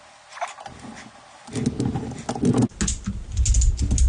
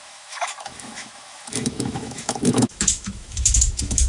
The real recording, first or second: first